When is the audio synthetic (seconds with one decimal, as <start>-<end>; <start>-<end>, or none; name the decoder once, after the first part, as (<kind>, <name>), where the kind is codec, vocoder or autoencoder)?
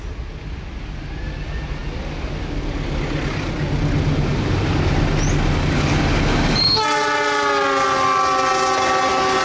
none